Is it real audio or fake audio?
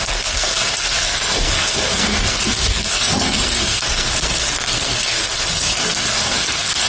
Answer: fake